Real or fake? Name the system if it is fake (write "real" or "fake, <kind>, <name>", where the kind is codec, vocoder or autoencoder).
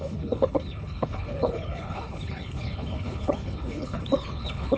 fake, codec, HILCodec